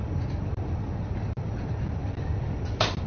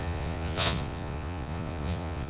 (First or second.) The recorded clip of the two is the first